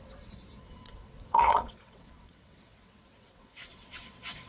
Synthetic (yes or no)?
yes